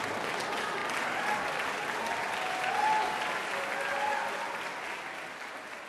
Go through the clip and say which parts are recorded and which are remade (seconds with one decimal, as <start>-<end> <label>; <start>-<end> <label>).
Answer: 0.0-5.9 recorded